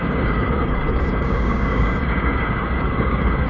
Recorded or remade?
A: remade